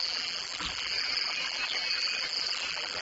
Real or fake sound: fake